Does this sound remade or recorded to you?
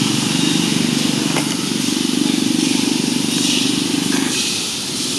recorded